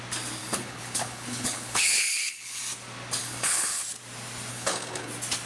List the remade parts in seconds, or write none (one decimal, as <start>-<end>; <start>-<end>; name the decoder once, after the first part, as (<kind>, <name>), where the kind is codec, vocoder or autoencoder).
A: 0.4-2.6 (codec, HILCodec); 3.2-3.8; 4.5-5.1